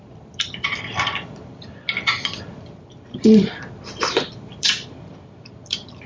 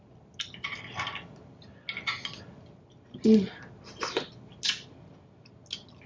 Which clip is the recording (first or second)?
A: second